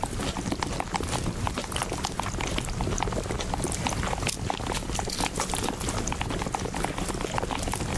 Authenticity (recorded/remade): recorded